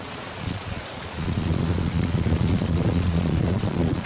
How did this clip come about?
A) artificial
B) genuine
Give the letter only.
A